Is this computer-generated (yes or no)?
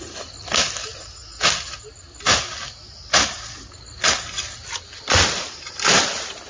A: no